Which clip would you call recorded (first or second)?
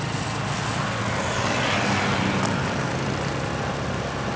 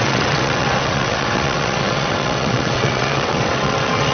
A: first